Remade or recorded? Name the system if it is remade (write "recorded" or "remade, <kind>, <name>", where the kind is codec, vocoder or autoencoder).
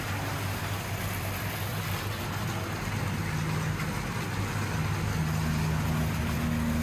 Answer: recorded